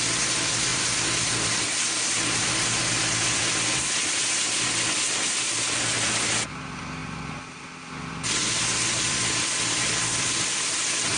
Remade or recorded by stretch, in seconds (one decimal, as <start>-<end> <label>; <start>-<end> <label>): 0.0-11.2 recorded